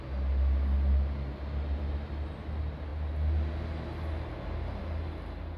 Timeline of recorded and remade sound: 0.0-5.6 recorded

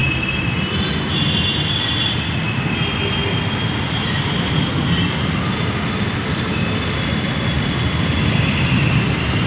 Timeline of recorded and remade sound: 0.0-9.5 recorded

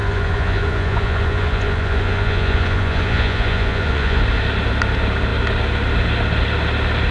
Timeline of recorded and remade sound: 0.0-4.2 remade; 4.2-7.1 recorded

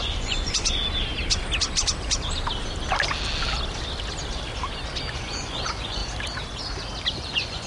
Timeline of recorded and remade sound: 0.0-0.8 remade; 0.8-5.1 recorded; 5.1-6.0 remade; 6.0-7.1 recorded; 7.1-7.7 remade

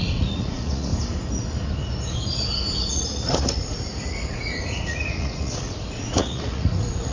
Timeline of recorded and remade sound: 0.0-0.9 remade; 0.9-2.9 recorded; 2.9-7.1 remade

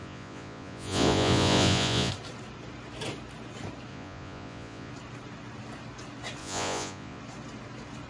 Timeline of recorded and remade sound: 0.0-2.1 remade; 2.1-3.9 recorded; 3.9-4.9 remade; 4.9-6.4 recorded; 6.4-7.2 remade; 7.2-8.1 recorded